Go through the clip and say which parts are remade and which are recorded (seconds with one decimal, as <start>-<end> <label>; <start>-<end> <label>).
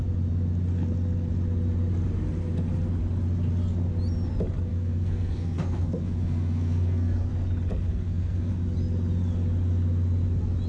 0.0-4.7 recorded; 4.7-7.3 remade; 7.3-7.9 recorded; 7.9-8.5 remade; 8.5-10.7 recorded